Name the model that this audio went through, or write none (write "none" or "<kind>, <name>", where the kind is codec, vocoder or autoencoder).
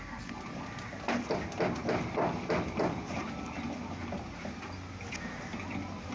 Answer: none